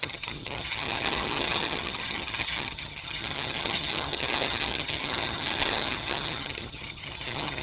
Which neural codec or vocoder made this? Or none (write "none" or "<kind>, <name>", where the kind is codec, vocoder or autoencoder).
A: vocoder, HiFi-GAN